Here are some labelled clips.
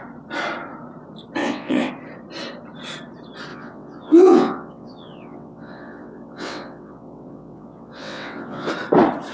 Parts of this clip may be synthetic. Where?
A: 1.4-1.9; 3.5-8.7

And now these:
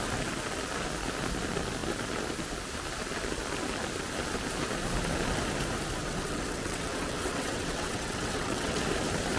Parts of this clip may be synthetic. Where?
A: 6.0-8.8